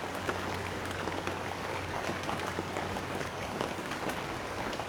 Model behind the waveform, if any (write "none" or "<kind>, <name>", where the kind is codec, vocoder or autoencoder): codec, DAC